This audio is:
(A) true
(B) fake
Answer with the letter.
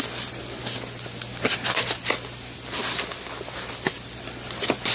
A